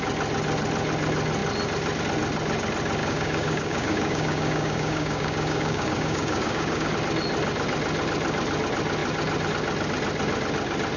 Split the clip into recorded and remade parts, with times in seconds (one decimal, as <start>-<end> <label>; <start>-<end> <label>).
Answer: 0.0-3.0 recorded; 3.0-6.9 remade; 6.9-11.0 recorded